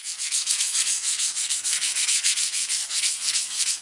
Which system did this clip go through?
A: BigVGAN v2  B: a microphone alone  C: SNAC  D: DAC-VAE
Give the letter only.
C